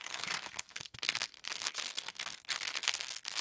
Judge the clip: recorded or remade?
remade